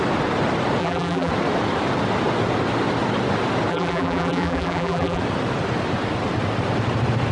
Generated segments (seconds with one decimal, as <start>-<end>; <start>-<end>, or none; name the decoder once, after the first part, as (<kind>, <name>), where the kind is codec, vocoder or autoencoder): 0.8-1.3 (vocoder, BigVGAN v2); 3.7-5.2